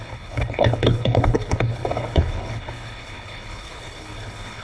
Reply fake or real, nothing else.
fake